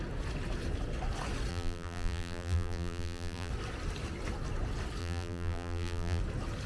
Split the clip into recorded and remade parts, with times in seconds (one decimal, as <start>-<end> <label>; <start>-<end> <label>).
0.0-1.5 recorded; 1.5-3.5 remade; 3.5-5.0 recorded; 5.0-6.2 remade; 6.2-6.7 recorded